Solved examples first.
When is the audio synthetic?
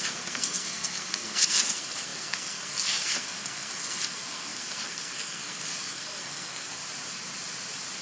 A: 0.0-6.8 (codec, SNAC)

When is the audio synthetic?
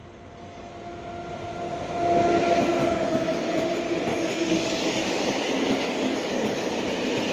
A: 0.0-0.7 (codec, DAC); 2.8-3.6; 4.1-6.8